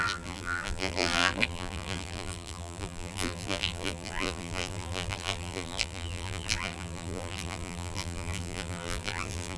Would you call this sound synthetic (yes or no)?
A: yes